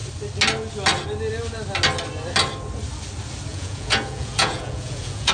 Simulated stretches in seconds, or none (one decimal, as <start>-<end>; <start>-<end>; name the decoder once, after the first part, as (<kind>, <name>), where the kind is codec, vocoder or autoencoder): 3.5-5.3 (vocoder, Vocos)